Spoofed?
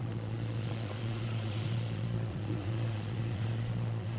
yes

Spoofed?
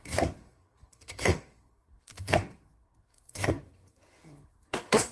yes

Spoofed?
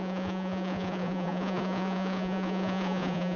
yes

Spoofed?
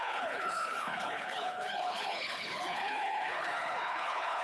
yes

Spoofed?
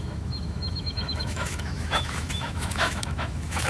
yes